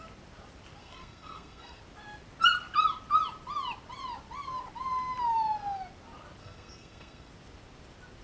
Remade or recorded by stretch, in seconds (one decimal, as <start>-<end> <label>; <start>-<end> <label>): 0.0-0.8 recorded; 0.8-1.8 remade; 1.8-6.4 recorded; 6.4-7.3 remade; 7.3-8.2 recorded